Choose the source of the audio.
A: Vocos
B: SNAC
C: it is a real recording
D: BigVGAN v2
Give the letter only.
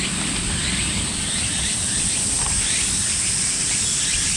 C